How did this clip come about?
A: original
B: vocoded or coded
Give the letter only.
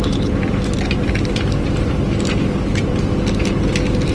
A